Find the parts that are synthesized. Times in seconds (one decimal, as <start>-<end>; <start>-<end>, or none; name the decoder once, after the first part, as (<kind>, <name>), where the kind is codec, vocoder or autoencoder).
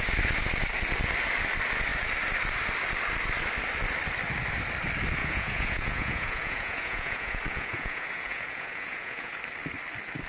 5.2-9.4 (vocoder, Vocos)